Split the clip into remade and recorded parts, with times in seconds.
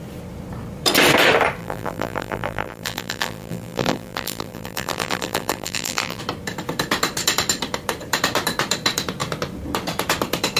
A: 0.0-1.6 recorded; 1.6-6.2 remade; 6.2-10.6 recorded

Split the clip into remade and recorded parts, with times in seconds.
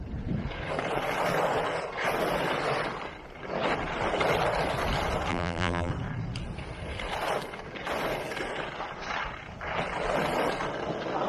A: 0.0-5.3 recorded; 5.3-5.9 remade; 5.9-11.3 recorded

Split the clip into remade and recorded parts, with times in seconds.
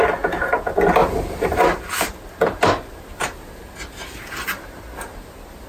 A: 0.0-5.7 recorded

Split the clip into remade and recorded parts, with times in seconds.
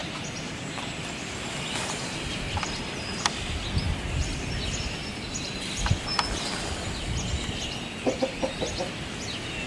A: 0.0-2.8 remade; 2.8-5.0 recorded; 5.0-7.1 remade; 7.1-9.7 recorded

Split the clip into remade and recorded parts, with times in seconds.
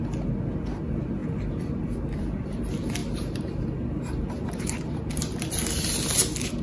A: 0.0-1.2 recorded; 1.2-2.2 remade; 2.2-3.0 recorded; 3.0-5.4 remade; 5.4-6.6 recorded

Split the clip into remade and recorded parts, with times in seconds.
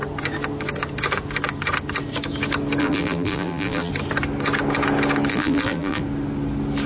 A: 0.0-2.8 recorded; 2.8-3.9 remade; 3.9-5.3 recorded; 5.3-6.0 remade; 6.0-6.9 recorded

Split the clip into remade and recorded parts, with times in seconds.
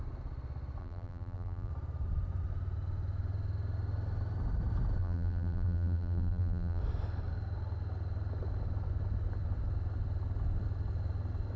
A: 0.0-0.8 recorded; 0.8-1.7 remade; 1.7-5.0 recorded; 5.0-6.8 remade; 6.8-11.6 recorded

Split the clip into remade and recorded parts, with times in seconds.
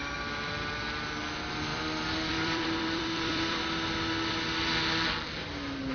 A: 0.0-1.7 recorded; 1.7-3.6 remade; 3.6-5.9 recorded